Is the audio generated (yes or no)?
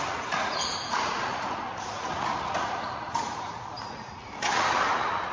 yes